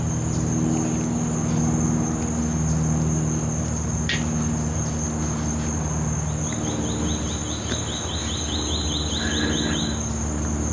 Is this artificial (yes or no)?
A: no